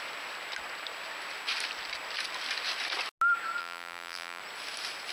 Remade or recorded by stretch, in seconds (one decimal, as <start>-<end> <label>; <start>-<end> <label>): 0.0-3.6 recorded; 3.6-4.4 remade; 4.4-5.1 recorded